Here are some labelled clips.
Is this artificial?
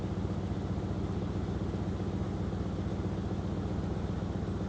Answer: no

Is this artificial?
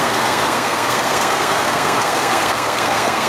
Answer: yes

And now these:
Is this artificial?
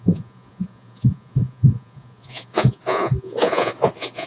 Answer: yes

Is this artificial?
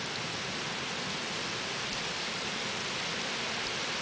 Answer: no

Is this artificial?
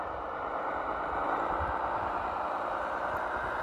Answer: no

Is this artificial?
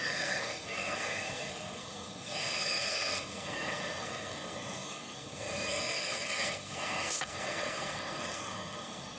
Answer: yes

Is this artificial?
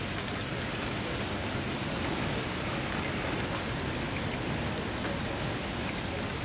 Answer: no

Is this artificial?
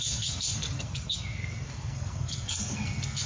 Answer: yes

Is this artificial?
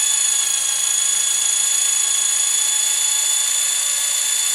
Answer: yes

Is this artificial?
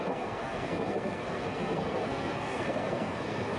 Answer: yes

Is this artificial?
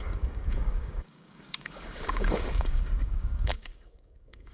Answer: yes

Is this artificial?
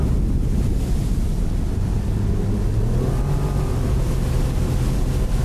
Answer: no